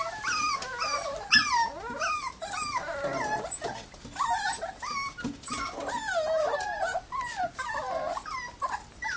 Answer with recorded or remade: recorded